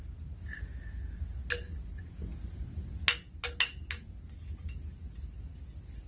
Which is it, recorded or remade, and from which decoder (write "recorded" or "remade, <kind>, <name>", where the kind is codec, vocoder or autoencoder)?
recorded